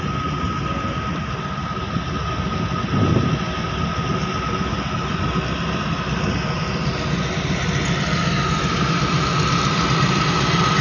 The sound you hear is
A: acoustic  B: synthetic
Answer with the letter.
A